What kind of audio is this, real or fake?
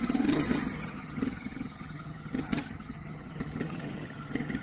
fake